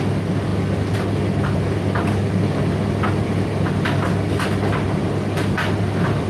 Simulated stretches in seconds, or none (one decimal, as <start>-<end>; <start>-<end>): none